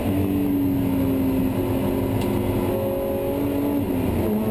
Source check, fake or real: real